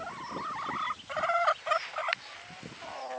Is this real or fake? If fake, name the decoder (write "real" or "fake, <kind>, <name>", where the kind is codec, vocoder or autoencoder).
real